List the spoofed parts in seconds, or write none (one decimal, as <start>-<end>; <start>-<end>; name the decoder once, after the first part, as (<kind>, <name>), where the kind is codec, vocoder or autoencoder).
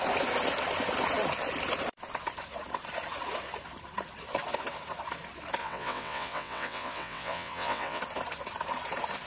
5.6-8.0 (vocoder, WaveNeXt)